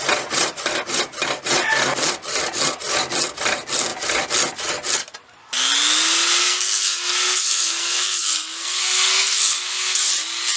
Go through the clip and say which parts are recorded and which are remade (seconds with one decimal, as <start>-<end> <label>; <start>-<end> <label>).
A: 0.0-6.4 recorded; 6.4-10.1 remade; 10.1-10.6 recorded